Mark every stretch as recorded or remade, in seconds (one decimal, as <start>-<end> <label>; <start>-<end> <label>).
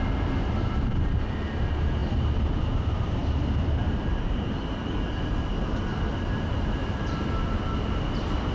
0.0-8.5 recorded